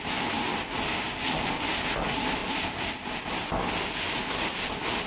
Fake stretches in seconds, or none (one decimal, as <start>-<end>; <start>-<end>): 0.0-2.4; 4.4-5.1